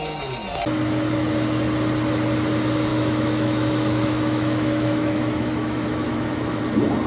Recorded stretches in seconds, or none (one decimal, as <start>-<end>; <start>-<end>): 0.0-2.9; 6.6-7.1